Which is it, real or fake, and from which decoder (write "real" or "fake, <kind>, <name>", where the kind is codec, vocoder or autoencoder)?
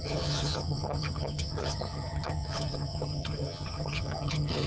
fake, vocoder, HiFi-GAN